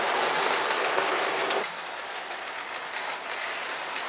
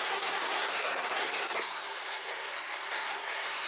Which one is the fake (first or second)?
second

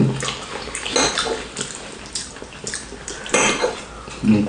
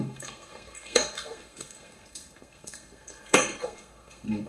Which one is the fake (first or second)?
second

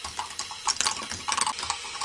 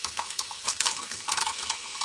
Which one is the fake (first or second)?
second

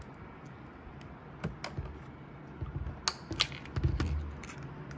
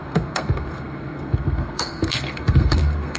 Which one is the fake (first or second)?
second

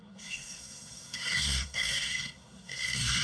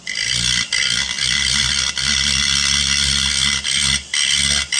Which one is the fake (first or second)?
first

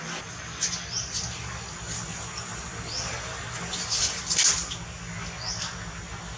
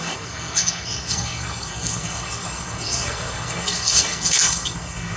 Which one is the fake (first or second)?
second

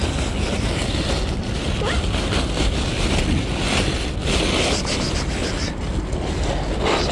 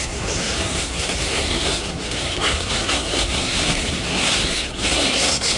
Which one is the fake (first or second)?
second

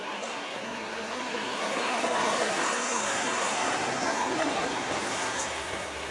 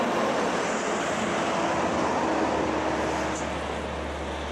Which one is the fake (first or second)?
first